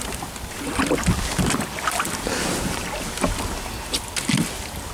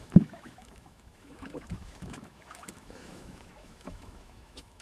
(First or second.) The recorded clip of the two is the first